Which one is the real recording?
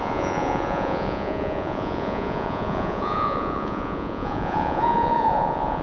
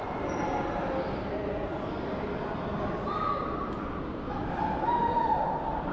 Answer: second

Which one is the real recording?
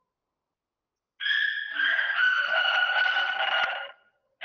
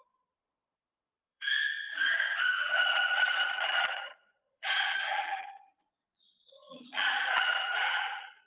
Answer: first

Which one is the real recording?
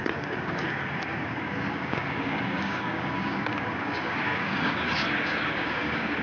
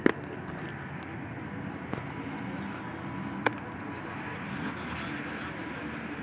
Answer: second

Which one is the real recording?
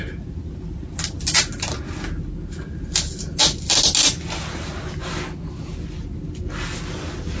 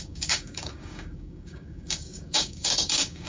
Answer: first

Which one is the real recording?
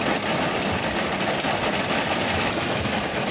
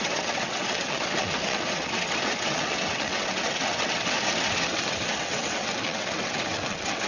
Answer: first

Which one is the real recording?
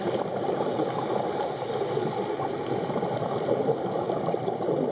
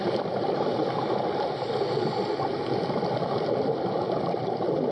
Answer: first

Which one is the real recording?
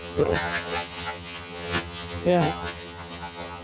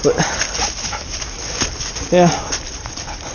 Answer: second